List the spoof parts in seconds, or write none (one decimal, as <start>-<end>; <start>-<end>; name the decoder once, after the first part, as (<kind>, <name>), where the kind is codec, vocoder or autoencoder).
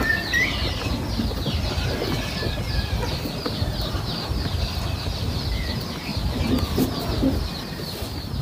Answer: none